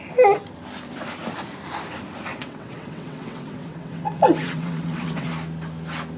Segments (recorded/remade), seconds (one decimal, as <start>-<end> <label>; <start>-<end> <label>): 0.0-2.3 recorded; 2.3-5.3 remade; 5.3-6.2 recorded